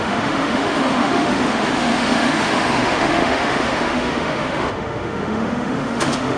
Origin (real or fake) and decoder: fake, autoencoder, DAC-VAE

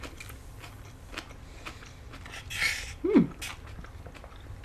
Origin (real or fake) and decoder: real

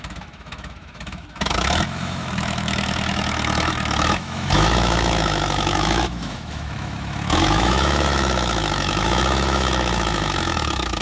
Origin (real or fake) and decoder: fake, autoencoder, DAC-VAE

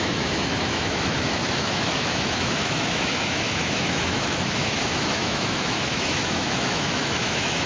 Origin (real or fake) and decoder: fake, autoencoder, DAC-VAE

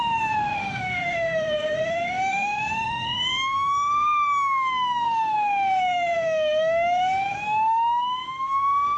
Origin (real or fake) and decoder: fake, autoencoder, DAC-VAE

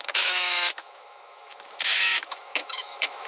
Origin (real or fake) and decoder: fake, autoencoder, DAC-VAE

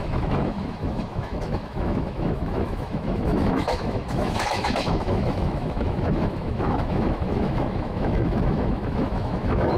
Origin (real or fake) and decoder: fake, autoencoder, DAC-VAE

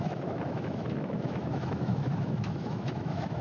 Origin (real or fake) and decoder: fake, autoencoder, DAC-VAE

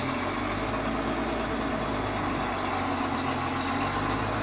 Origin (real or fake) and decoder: real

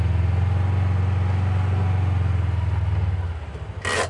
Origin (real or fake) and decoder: real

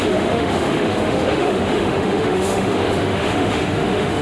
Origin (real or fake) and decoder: fake, autoencoder, DAC-VAE